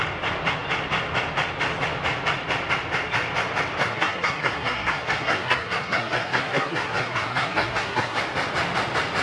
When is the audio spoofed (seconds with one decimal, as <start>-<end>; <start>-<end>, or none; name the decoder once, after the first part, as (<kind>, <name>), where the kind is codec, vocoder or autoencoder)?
3.8-8.2 (codec, SNAC)